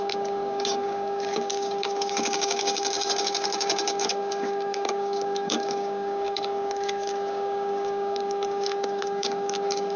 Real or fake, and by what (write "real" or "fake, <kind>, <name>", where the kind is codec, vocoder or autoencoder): fake, codec, DAC